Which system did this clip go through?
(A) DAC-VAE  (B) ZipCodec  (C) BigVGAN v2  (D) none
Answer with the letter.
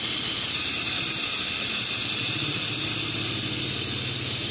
D